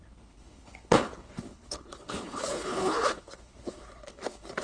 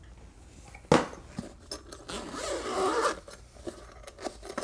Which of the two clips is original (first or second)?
second